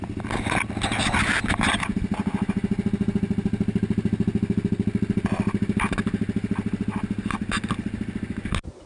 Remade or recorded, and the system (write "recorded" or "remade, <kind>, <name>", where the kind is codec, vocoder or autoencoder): recorded